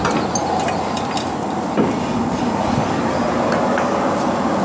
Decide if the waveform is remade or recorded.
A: recorded